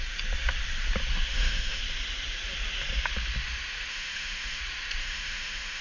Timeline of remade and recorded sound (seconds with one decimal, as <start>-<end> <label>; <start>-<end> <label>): 0.0-1.3 recorded; 1.3-1.8 remade; 1.8-3.9 recorded; 3.9-4.6 remade; 4.6-5.0 recorded; 5.0-5.8 remade